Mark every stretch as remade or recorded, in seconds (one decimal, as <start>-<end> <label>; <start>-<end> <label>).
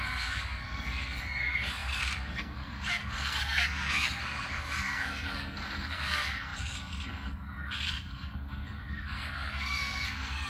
0.0-10.5 remade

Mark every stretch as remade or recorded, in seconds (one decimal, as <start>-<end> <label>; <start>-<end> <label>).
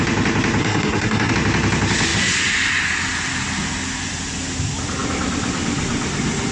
0.0-0.6 recorded; 0.6-1.3 remade; 1.3-6.5 recorded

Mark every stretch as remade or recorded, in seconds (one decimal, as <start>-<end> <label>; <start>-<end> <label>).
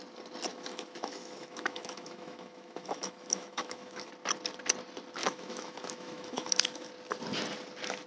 0.0-0.5 recorded; 0.5-4.1 remade; 4.1-5.2 recorded; 5.2-6.9 remade; 6.9-8.1 recorded